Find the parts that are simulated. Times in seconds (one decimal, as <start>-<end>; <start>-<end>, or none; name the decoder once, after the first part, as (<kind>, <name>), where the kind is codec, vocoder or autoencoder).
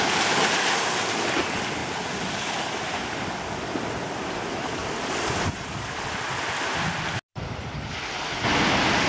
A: 1.8-3.5 (vocoder, BigVGAN v2); 4.8-5.6